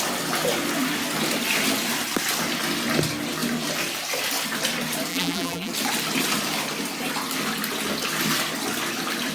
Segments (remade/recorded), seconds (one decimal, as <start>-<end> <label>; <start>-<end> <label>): 0.0-5.1 recorded; 5.1-5.7 remade; 5.7-9.3 recorded